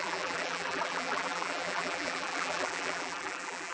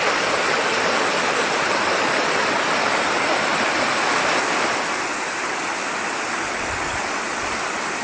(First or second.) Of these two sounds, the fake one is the first